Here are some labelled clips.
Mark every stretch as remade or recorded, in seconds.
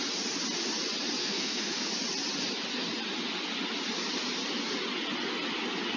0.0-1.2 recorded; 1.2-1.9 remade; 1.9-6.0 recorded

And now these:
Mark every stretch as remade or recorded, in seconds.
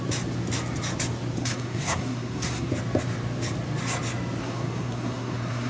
0.0-1.4 recorded; 1.4-2.7 remade; 2.7-4.4 recorded; 4.4-5.7 remade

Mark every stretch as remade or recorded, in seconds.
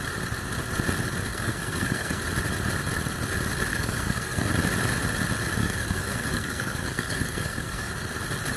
0.0-1.3 recorded; 1.3-2.2 remade; 2.2-3.7 recorded; 3.7-4.5 remade; 4.5-5.6 recorded; 5.6-7.9 remade; 7.9-8.6 recorded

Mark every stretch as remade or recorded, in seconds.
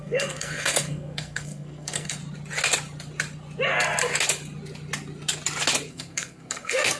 0.0-2.2 remade; 2.2-5.9 recorded; 5.9-7.0 remade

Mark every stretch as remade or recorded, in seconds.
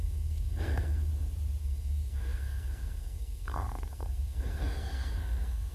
0.0-1.1 remade; 1.1-1.6 recorded; 1.6-5.7 remade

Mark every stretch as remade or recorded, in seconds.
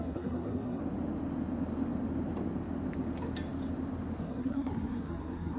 0.0-0.8 remade; 0.8-4.2 recorded; 4.2-5.6 remade